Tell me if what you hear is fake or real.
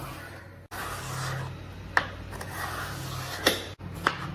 real